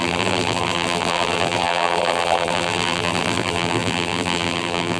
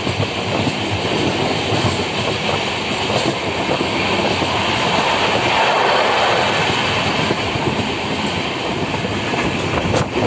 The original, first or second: second